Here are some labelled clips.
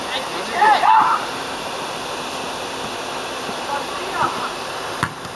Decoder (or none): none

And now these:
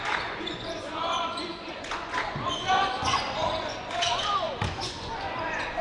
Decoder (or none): vocoder, Vocos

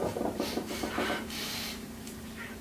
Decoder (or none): vocoder, BigVGAN v2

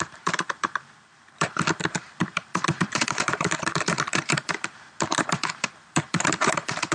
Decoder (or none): vocoder, BigVGAN v2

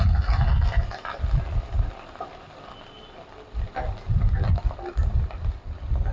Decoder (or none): none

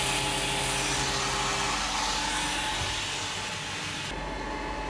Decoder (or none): none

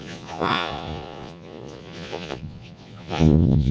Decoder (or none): vocoder, Vocos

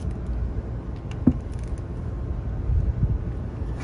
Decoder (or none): none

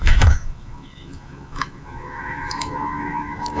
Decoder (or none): autoencoder, DAC-VAE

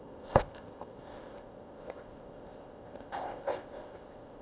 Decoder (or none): codec, ZipCodec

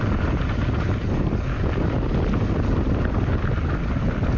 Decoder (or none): none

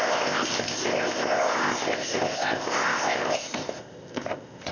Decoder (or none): codec, ZipCodec